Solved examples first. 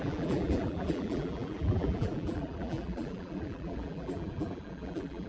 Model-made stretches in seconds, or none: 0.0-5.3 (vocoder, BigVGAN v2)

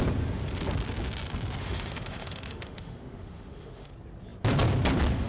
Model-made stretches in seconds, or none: 1.6-3.9 (autoencoder, DAC-VAE)

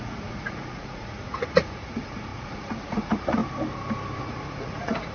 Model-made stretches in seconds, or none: 0.0-3.4 (vocoder, Vocos); 4.2-5.1

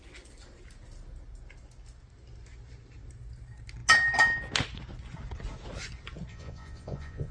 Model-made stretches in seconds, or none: 6.3-7.3 (vocoder, Vocos)